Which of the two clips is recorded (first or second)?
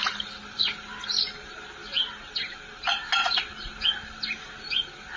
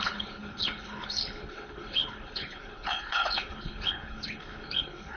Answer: first